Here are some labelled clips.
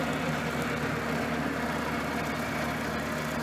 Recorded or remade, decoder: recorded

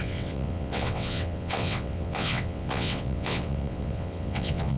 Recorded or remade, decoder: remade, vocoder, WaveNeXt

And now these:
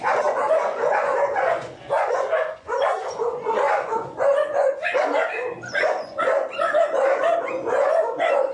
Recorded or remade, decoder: remade, vocoder, Vocos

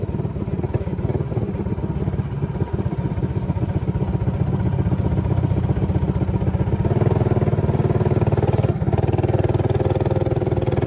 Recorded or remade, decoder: recorded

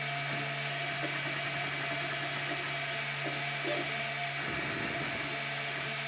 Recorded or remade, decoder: recorded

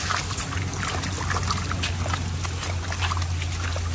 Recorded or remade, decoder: recorded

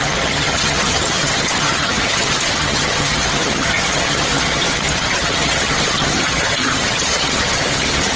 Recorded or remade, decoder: remade, vocoder, HiFi-GAN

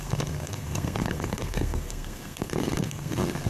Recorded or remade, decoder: remade, codec, SNAC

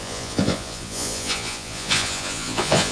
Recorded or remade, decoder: remade, vocoder, Vocos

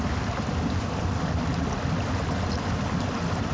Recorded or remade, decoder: recorded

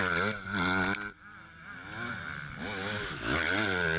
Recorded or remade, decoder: recorded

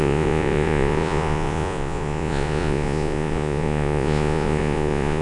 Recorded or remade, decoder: remade, vocoder, Vocos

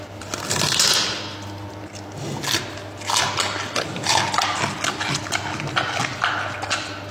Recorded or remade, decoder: recorded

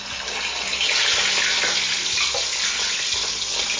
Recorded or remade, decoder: recorded